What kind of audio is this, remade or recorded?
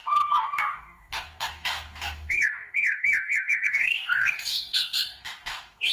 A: remade